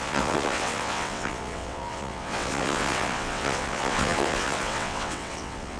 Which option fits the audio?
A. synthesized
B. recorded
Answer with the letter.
A